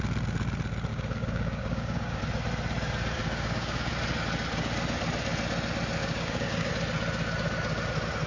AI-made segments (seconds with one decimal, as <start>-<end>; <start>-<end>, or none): 0.9-2.2; 3.2-3.9; 6.0-6.7